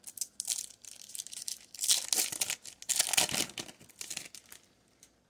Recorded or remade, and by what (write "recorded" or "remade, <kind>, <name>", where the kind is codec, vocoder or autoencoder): recorded